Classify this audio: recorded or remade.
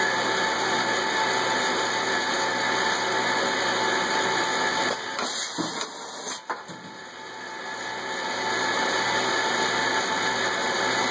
recorded